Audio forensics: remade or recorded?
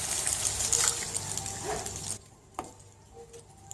recorded